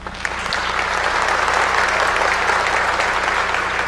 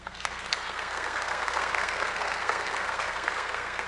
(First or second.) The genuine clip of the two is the first